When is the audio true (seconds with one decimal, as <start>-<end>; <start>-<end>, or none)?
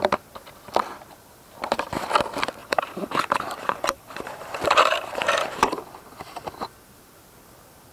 0.0-2.6; 5.8-7.9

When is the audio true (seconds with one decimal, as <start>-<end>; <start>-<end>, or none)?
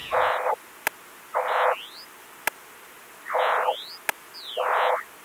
0.0-5.2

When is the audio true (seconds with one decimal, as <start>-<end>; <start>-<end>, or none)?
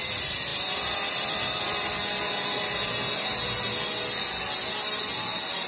0.0-0.5; 1.9-5.7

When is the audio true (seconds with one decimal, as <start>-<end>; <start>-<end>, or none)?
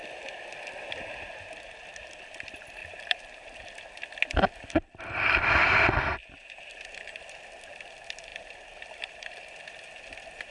0.0-2.8; 3.7-6.2; 7.2-8.3; 9.4-10.5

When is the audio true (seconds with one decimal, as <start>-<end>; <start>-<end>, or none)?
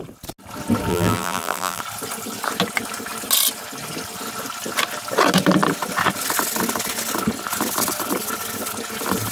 0.0-0.9; 1.8-9.3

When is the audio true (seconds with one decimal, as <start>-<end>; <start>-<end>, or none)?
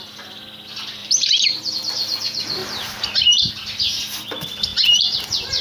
0.0-1.0; 1.7-2.6; 3.5-5.6